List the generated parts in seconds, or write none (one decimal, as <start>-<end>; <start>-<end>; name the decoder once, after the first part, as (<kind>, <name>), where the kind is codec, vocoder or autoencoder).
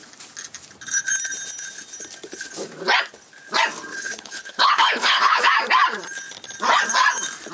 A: 3.9-5.4 (codec, HILCodec)